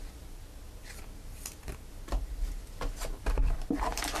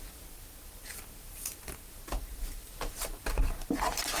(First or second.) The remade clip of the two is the second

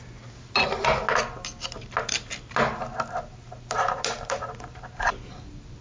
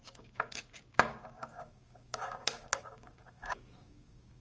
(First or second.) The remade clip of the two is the second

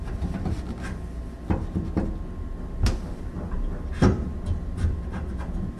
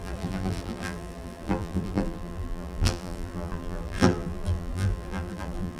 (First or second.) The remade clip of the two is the second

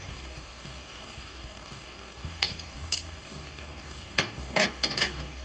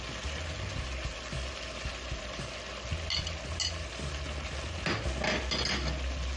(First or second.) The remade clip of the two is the first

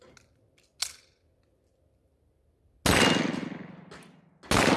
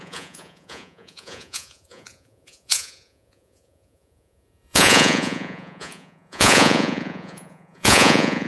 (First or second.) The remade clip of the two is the second